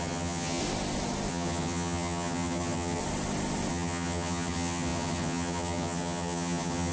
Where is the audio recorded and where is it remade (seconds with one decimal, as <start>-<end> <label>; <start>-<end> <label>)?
0.0-0.6 remade; 0.6-1.3 recorded; 1.3-3.0 remade; 3.0-3.7 recorded; 3.7-6.9 remade